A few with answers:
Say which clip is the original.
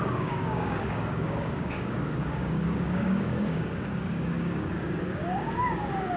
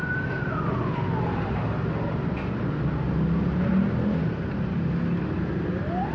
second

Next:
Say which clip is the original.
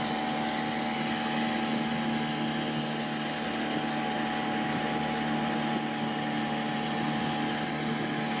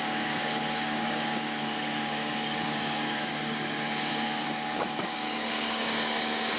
first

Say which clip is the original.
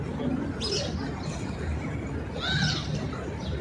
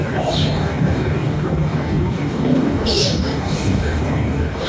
first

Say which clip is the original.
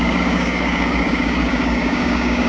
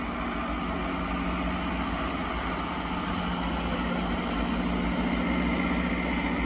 second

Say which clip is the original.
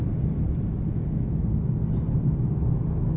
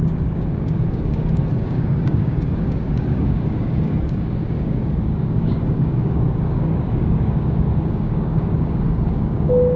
first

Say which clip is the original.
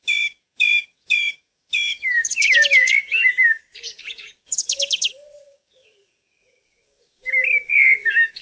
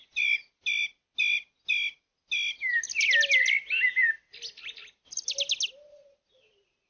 second